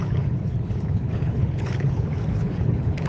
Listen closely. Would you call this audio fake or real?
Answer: fake